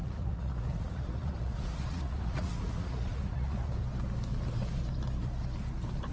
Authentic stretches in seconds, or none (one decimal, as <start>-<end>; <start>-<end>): 3.7-6.1